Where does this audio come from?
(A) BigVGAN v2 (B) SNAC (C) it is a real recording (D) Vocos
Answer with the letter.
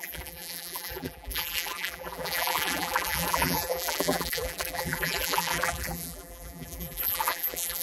A